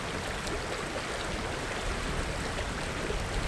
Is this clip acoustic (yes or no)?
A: yes